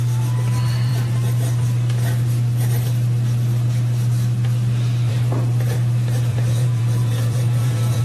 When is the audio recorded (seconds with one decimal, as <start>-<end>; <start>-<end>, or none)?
0.0-6.3